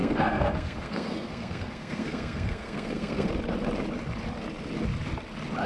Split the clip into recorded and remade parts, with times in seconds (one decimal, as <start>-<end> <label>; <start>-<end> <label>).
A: 0.0-3.3 remade; 3.3-5.7 recorded